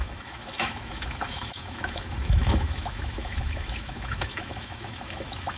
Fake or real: fake